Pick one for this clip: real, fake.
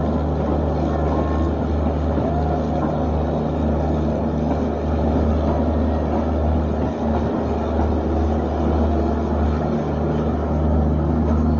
real